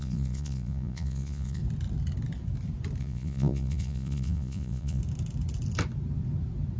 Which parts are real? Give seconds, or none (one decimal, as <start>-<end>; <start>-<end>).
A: 1.6-3.0; 5.0-6.8